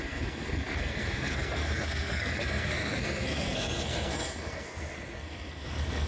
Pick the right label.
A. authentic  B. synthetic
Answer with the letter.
B